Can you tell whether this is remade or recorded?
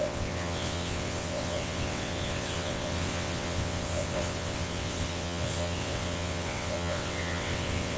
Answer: remade